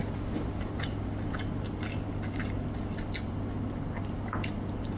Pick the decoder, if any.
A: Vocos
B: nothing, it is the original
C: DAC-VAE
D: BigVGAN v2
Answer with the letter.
B